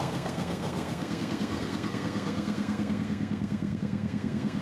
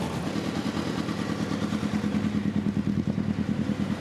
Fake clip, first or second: first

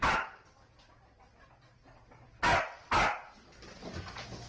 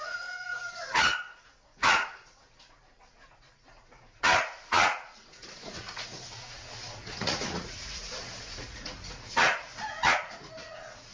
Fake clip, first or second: second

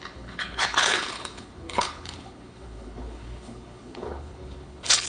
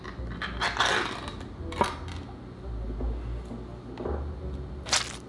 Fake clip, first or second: first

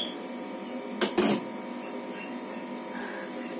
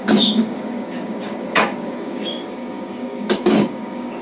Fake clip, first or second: second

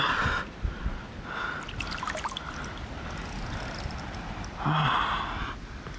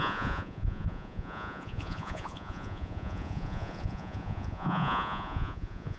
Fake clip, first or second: second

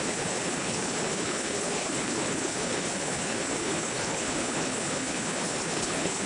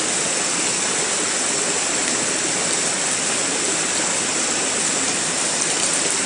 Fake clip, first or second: first